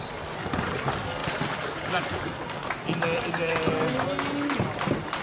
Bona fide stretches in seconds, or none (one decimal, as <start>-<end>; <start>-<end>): 0.0-1.2; 2.2-5.2